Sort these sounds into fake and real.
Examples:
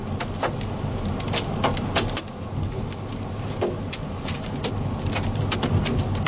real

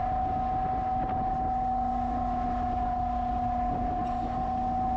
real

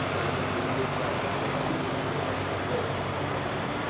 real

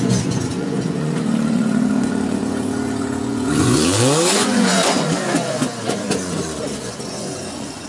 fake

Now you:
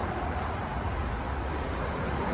fake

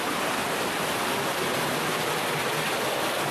real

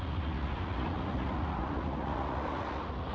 fake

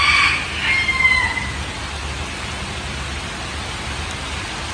real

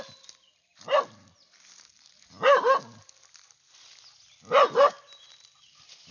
real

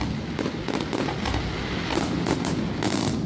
real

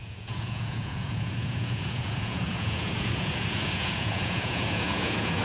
fake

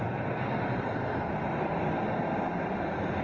real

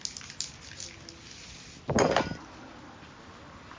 real